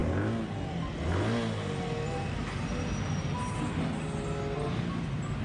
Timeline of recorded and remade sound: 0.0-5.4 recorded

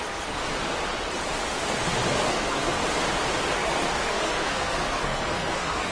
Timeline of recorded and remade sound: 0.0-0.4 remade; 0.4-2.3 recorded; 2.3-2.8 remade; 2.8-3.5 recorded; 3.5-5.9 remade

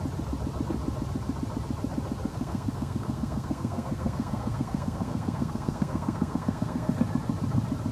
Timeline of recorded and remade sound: 0.0-2.3 recorded; 2.3-7.0 remade; 7.0-7.9 recorded